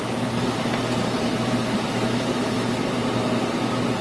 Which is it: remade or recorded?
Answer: recorded